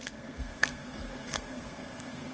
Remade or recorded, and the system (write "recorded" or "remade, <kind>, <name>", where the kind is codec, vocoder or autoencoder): remade, codec, SNAC